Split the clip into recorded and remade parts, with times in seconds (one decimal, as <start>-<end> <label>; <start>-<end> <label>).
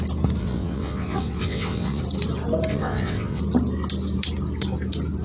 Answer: 0.0-0.4 recorded; 0.4-2.0 remade; 2.0-2.7 recorded; 2.7-3.4 remade; 3.4-5.2 recorded